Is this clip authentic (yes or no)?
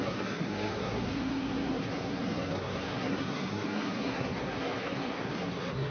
no